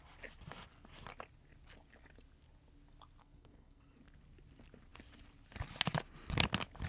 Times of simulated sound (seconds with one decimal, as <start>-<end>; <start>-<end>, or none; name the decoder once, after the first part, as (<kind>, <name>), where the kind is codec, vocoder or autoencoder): 3.2-4.0 (codec, SNAC)